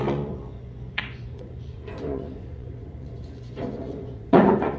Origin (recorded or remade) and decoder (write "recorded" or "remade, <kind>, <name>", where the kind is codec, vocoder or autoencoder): remade, vocoder, Vocos